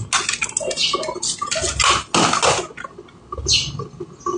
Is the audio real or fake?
real